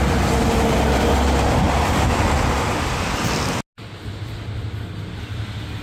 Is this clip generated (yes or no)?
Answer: no